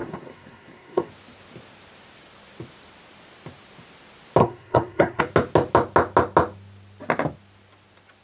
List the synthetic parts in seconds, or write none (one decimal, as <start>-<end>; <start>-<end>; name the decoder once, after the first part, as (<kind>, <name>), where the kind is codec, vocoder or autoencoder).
0.0-1.1 (codec, SNAC); 4.4-5.2